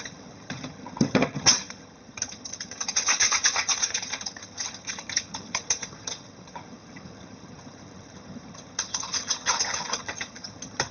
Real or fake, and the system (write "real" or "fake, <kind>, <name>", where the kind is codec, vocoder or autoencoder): fake, vocoder, HiFi-GAN